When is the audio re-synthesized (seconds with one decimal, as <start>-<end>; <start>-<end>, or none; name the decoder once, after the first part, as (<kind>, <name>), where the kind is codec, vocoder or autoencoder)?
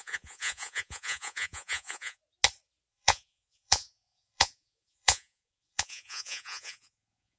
0.0-2.2 (vocoder, Vocos); 2.9-7.4